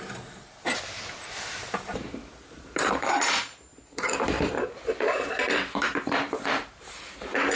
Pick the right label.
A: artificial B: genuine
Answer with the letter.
A